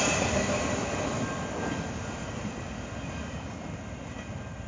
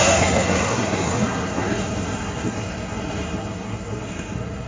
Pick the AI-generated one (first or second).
second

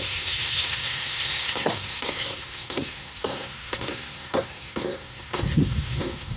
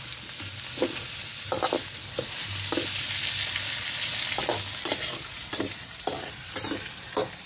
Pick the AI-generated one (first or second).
first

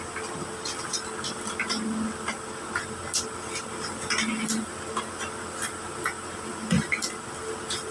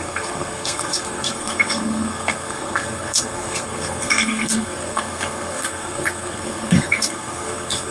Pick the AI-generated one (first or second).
second